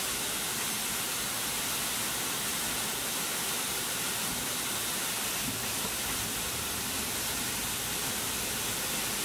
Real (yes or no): yes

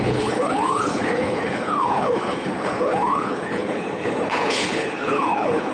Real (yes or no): no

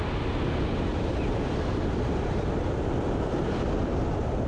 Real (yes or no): yes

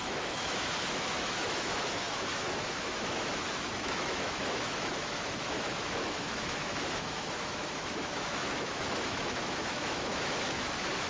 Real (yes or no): no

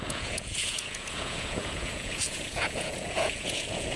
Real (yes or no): no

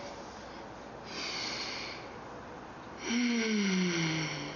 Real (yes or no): yes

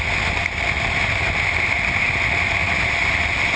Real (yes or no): yes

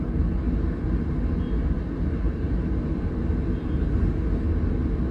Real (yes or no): yes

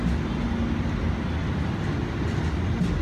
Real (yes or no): yes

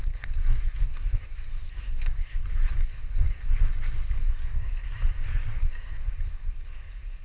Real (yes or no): no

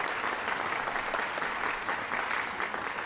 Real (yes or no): yes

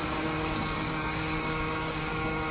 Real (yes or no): no